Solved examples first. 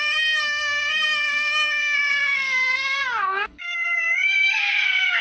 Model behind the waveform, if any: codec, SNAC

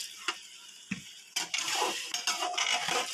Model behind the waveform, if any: none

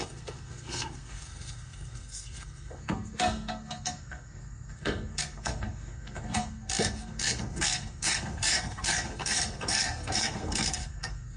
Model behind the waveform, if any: codec, SNAC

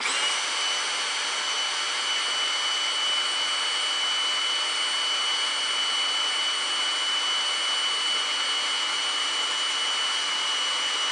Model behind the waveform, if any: none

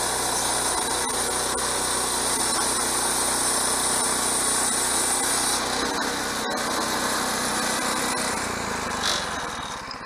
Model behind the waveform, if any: none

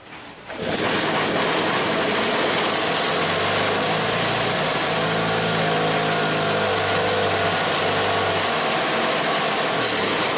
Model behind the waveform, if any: none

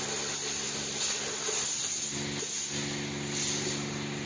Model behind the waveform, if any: none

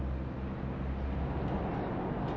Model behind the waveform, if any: none